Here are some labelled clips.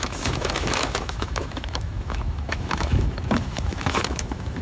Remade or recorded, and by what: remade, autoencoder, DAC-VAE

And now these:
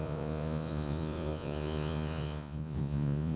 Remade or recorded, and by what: remade, vocoder, Vocos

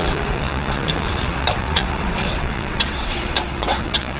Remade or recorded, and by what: remade, vocoder, WaveNeXt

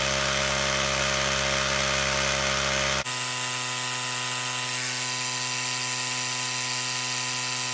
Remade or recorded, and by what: recorded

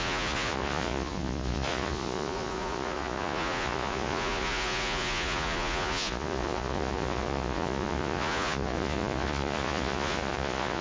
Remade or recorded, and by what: remade, vocoder, Vocos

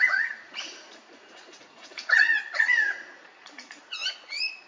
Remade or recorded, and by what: remade, vocoder, Vocos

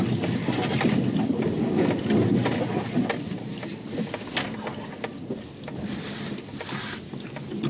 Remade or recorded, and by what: recorded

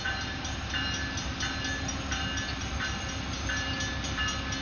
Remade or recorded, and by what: recorded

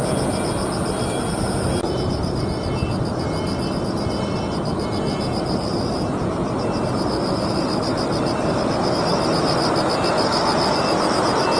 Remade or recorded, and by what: recorded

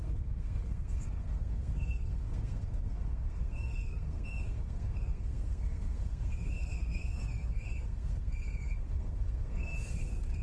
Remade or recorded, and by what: remade, codec, SNAC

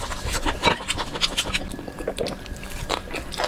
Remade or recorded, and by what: recorded